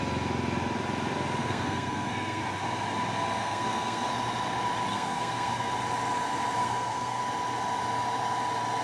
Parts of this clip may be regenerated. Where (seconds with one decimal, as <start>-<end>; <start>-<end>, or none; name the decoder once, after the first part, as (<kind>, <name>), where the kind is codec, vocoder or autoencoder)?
1.4-2.4 (codec, SNAC); 3.4-4.1; 4.9-5.7; 6.6-7.2